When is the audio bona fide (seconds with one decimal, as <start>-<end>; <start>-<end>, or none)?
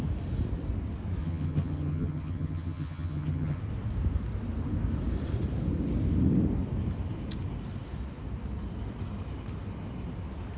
0.0-1.2; 3.6-10.6